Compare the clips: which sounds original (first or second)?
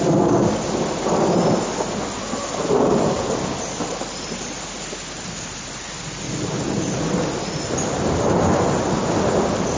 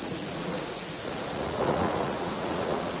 first